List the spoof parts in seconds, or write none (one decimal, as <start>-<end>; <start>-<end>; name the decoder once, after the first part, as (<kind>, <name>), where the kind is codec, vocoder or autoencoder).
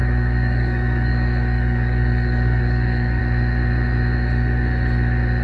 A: 0.0-3.2 (codec, DAC)